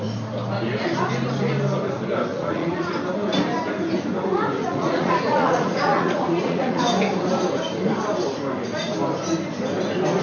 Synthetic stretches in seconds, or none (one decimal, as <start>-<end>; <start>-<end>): 2.3-2.9; 4.6-6.8